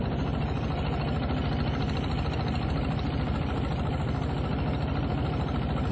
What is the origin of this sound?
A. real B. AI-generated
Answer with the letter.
A